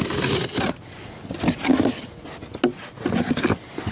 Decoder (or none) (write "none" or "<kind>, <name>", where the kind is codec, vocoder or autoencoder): none